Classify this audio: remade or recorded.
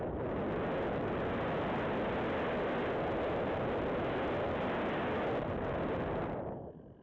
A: recorded